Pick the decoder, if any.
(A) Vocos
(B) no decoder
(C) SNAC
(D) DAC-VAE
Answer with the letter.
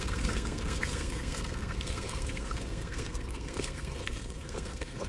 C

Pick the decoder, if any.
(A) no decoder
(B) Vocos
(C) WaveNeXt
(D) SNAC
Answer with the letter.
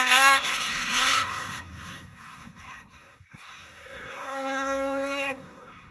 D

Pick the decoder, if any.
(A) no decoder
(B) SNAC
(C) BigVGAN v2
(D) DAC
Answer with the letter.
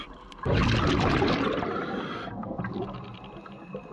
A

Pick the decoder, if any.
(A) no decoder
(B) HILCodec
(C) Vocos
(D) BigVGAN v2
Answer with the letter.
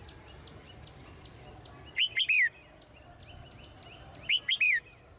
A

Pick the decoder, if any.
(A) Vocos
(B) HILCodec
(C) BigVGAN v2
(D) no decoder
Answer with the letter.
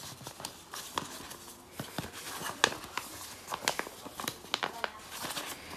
D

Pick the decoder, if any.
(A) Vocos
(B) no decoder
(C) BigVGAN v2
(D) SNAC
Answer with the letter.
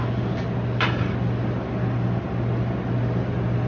B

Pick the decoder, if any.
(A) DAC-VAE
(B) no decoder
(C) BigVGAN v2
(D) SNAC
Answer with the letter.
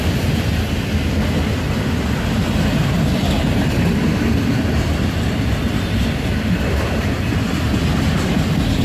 B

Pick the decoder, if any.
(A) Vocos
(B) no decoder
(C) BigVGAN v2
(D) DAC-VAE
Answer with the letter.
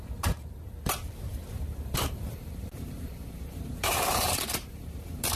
C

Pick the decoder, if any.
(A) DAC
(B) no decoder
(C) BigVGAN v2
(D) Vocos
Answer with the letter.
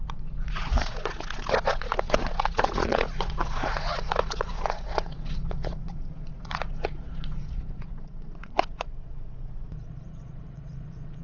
D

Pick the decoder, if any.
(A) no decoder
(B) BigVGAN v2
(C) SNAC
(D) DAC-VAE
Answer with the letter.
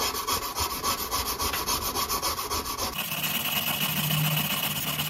A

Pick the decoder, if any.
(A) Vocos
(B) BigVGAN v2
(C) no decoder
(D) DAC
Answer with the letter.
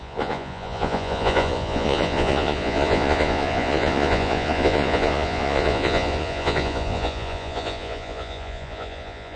A